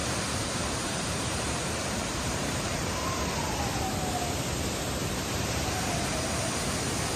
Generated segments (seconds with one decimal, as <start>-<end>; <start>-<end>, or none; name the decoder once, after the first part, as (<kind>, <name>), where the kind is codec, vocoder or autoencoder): 0.0-3.1 (vocoder, BigVGAN v2); 5.0-6.4